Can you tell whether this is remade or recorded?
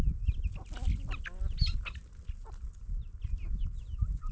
recorded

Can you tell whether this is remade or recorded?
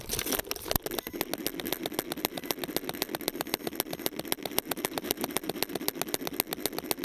recorded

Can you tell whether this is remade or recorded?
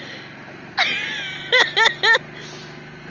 recorded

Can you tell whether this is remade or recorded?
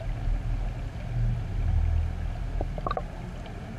recorded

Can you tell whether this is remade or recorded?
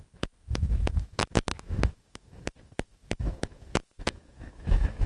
remade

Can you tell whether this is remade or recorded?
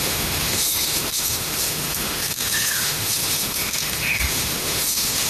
remade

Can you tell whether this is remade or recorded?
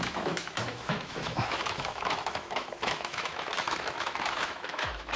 remade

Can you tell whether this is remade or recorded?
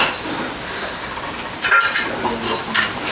recorded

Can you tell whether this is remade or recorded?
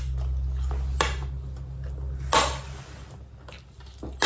recorded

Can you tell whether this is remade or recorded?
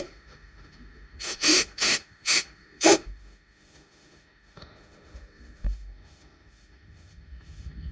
remade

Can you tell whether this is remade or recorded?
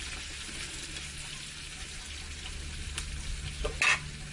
recorded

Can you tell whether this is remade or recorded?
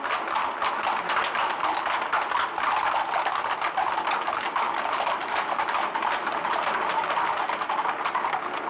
recorded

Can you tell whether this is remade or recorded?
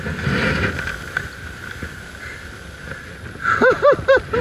recorded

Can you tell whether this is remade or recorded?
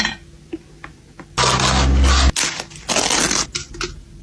recorded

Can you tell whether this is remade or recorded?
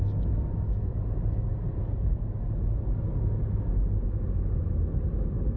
recorded